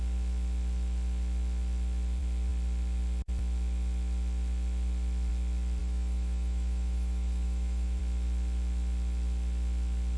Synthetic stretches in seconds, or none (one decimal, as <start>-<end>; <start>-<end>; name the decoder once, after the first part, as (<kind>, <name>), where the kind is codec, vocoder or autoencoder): 5.8-8.0 (autoencoder, DAC-VAE)